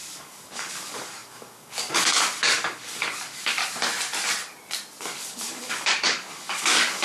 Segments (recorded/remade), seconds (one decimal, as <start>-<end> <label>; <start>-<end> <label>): 0.0-3.6 remade; 3.6-5.0 recorded; 5.0-7.0 remade